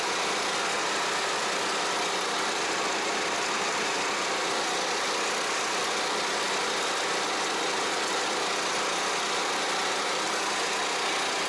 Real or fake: real